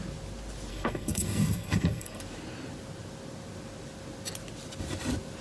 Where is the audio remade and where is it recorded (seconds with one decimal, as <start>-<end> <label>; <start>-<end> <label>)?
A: 0.0-0.7 recorded; 0.7-2.2 remade; 2.2-5.4 recorded